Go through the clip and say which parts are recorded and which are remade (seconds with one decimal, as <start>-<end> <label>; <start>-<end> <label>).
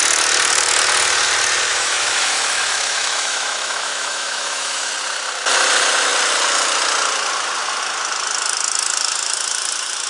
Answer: 0.0-1.7 recorded; 1.7-4.9 remade; 4.9-10.1 recorded